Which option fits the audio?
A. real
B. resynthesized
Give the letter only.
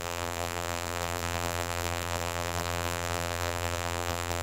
B